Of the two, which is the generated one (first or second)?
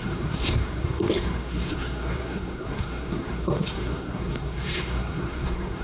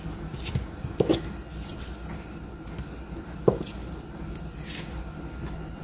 first